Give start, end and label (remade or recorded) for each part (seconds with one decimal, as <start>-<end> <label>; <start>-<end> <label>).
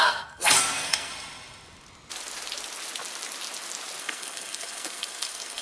0.0-1.1 remade; 1.1-4.0 recorded; 4.0-5.6 remade